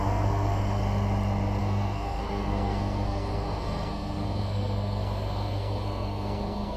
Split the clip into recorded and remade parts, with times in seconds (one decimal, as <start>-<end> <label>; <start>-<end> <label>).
0.0-0.8 remade; 0.8-1.6 recorded; 1.6-6.8 remade